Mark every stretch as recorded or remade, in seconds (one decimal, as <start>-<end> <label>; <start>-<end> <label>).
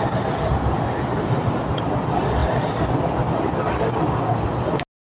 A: 0.0-5.1 recorded